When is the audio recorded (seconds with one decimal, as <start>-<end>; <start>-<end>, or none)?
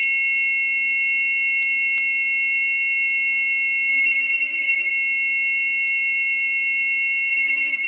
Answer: 0.0-3.9; 4.9-7.3